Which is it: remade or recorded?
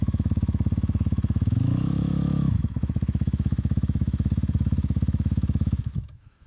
remade